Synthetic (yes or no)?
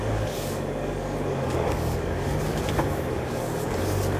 yes